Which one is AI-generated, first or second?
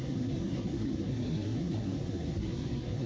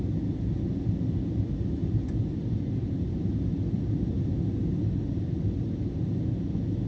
first